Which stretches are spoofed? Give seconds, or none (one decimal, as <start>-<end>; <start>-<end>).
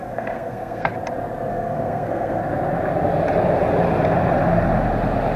0.0-0.9; 1.5-2.4